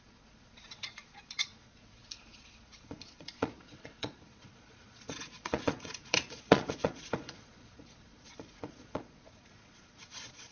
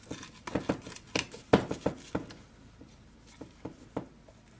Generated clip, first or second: first